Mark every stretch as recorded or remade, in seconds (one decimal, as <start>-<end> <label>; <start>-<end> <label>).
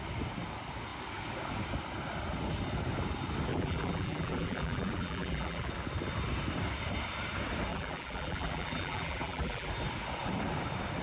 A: 0.0-3.5 recorded; 3.5-5.7 remade; 5.7-7.7 recorded; 7.7-9.7 remade; 9.7-11.0 recorded